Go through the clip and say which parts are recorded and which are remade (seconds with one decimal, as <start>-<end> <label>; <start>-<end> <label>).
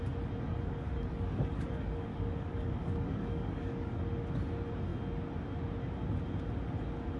0.0-0.5 recorded; 0.5-4.0 remade; 4.0-7.2 recorded